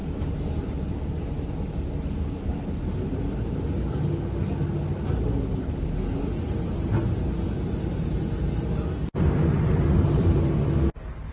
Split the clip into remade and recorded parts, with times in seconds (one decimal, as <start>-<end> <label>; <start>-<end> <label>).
0.0-1.6 remade; 1.6-11.3 recorded